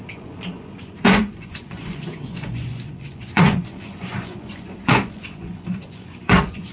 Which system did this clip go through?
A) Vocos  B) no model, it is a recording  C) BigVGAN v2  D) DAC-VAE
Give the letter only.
A